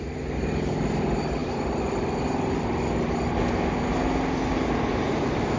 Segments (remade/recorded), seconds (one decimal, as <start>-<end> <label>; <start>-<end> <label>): 0.0-5.6 recorded